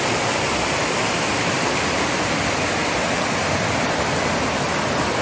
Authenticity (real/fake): real